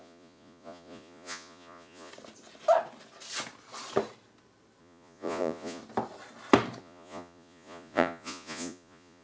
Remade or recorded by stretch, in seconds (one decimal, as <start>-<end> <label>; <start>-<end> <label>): 0.0-2.1 remade; 2.1-4.8 recorded; 4.8-5.8 remade; 5.8-6.8 recorded; 6.8-9.2 remade